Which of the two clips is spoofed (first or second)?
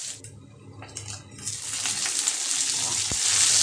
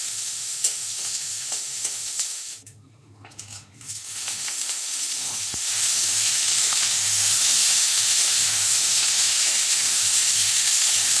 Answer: second